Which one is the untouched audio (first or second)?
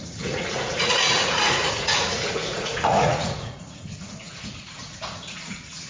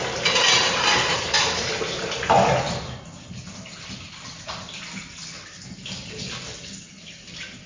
second